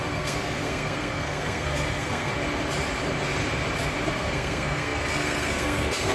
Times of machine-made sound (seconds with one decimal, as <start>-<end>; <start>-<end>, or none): 0.0-2.3; 4.1-6.1